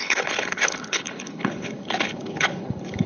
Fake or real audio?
fake